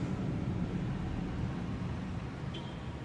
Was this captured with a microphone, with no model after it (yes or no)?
yes